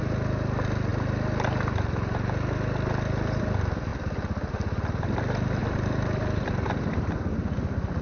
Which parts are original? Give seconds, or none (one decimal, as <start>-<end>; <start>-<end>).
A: 0.0-5.6